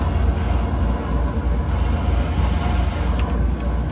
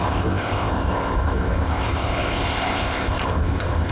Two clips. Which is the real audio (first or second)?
first